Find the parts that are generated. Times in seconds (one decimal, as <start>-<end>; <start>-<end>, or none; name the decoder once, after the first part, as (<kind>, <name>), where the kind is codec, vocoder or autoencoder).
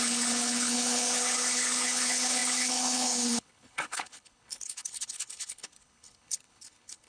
0.0-7.1 (codec, HILCodec)